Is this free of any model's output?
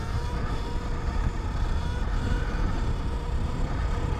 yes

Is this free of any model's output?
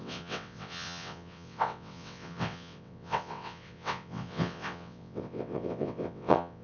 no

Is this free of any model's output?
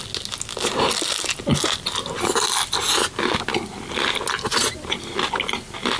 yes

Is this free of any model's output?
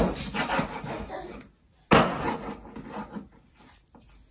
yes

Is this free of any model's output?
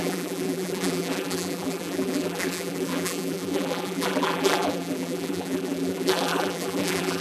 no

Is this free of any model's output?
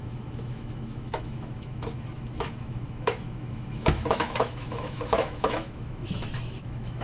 no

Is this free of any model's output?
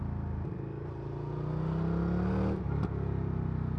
yes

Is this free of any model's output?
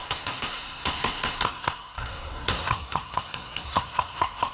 no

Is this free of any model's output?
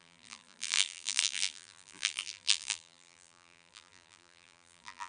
no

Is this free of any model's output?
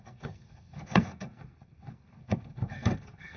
no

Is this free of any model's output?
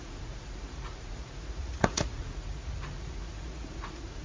no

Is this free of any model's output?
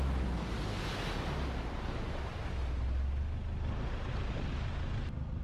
yes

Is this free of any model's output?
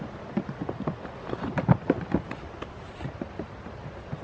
yes